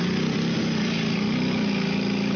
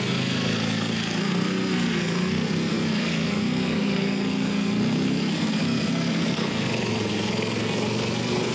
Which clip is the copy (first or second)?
second